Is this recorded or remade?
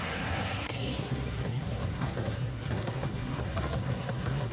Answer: remade